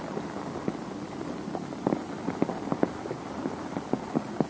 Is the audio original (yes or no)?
yes